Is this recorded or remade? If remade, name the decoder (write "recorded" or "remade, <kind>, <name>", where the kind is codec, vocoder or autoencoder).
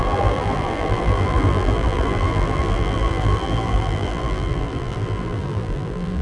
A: remade, vocoder, BigVGAN v2